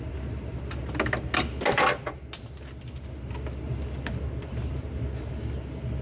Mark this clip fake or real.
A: real